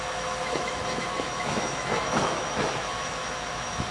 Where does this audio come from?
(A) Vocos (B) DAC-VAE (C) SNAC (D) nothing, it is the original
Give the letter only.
B